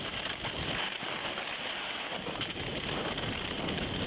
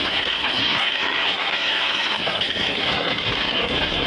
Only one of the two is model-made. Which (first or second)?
second